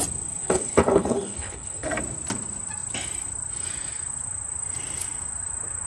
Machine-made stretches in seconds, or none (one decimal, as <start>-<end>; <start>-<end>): 0.4-1.9